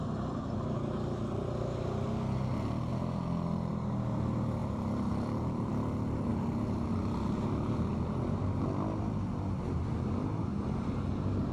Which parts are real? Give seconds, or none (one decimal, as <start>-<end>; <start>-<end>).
0.0-2.9; 3.7-4.6; 5.7-6.3; 6.9-11.5